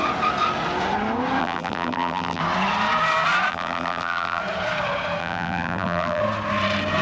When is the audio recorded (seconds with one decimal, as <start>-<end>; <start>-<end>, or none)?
0.0-1.4; 2.4-3.5; 4.4-5.2; 6.2-7.0